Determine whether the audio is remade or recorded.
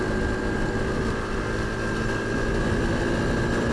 recorded